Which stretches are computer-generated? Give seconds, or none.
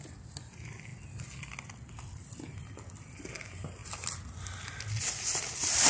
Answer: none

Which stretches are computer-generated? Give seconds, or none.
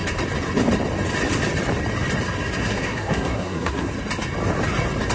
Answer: 2.6-3.9 (codec, SNAC)